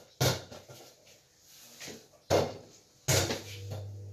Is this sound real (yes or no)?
yes